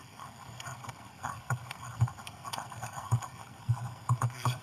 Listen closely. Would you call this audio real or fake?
fake